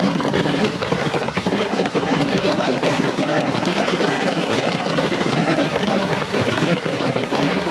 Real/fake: fake